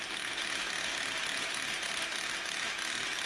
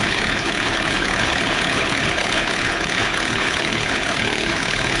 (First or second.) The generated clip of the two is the second